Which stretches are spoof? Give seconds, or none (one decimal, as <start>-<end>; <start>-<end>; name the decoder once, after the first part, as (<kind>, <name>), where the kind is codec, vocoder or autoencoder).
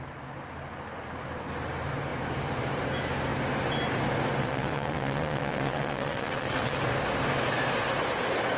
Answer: 4.4-6.8 (vocoder, WaveNeXt)